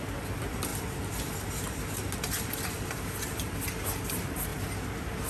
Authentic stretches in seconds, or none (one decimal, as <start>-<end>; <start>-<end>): 0.0-5.3

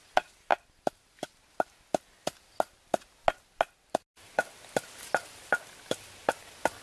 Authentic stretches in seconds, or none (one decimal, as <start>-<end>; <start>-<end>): 0.0-6.8

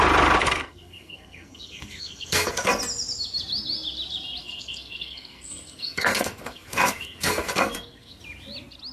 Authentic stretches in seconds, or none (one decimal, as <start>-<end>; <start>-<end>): 0.0-0.4; 2.7-4.4; 8.2-8.9

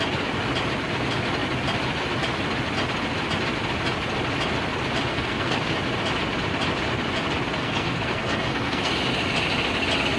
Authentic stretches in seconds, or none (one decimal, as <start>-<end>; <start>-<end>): 0.0-5.1; 5.6-7.6; 8.9-10.2

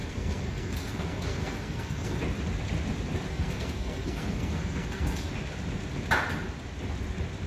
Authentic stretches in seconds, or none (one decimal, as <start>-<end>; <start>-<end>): 2.2-3.3; 5.3-7.5

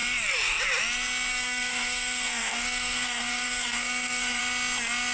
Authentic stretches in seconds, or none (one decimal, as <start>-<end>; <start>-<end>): 0.0-1.3; 4.4-5.1

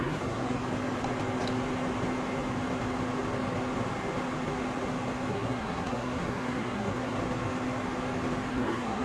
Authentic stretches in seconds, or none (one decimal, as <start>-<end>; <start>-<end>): 0.6-5.3; 7.2-8.5